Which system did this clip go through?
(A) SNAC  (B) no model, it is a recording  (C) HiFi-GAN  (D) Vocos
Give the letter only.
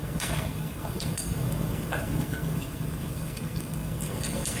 A